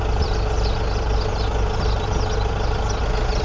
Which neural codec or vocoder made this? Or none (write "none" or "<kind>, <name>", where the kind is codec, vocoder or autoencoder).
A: none